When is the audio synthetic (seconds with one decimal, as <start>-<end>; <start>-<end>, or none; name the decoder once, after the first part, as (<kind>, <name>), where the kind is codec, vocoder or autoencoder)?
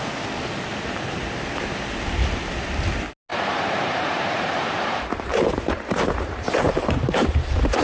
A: 3.3-7.8 (vocoder, BigVGAN v2)